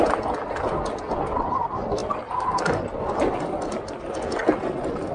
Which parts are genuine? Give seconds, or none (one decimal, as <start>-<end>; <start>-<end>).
0.0-5.1